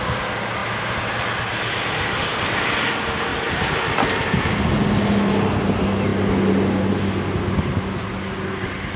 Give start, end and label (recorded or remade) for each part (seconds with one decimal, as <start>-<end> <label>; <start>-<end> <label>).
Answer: 0.0-3.3 recorded; 3.3-3.8 remade; 3.8-9.0 recorded